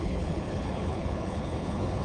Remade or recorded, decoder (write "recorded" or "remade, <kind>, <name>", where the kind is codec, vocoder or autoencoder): remade, codec, HILCodec